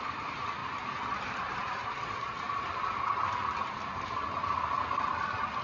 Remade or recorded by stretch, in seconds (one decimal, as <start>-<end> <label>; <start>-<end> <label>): 0.0-0.6 recorded; 0.6-4.0 remade; 4.0-5.6 recorded